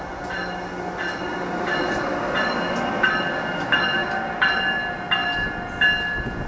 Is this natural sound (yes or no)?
yes